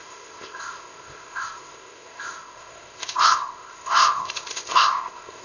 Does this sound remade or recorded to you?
remade